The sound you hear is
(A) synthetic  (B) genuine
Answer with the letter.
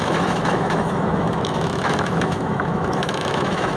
A